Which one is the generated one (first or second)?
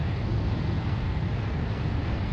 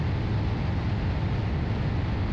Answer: first